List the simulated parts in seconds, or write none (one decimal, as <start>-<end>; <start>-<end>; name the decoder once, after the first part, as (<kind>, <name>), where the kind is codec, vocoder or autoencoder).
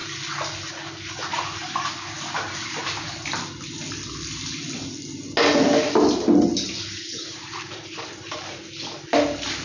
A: 1.3-3.1 (vocoder, BigVGAN v2); 7.1-8.6